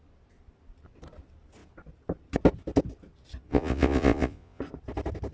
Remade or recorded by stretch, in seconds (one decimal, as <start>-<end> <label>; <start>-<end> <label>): 0.0-3.5 recorded; 3.5-4.6 remade; 4.6-5.3 recorded